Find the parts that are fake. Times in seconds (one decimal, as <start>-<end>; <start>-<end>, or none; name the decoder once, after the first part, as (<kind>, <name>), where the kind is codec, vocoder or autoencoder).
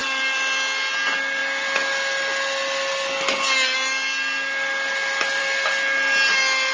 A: none